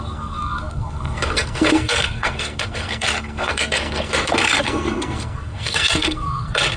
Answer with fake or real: fake